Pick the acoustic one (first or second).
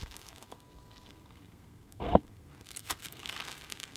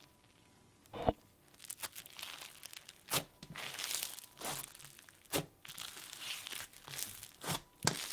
second